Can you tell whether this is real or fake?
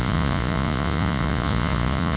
fake